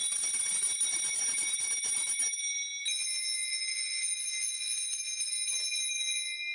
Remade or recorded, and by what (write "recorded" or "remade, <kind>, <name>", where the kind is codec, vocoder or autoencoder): recorded